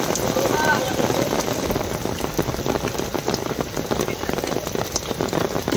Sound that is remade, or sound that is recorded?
recorded